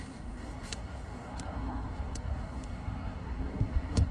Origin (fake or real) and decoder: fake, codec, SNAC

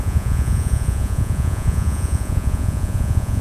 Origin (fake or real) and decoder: fake, vocoder, Vocos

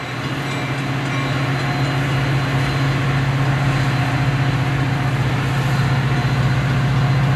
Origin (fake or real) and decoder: real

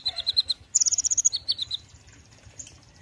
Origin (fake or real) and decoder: fake, vocoder, BigVGAN v2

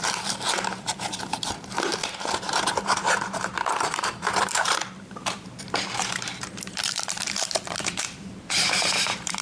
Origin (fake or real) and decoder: fake, vocoder, BigVGAN v2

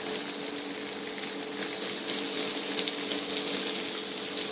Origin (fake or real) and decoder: real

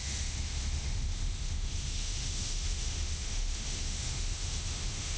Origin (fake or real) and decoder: fake, autoencoder, DAC-VAE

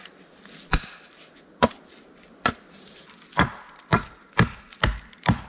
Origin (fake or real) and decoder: real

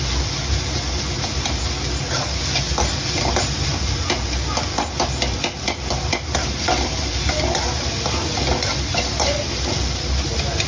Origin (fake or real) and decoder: real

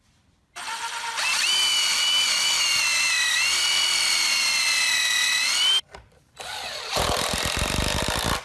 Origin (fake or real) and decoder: real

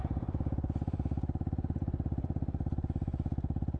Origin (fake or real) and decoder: fake, vocoder, BigVGAN v2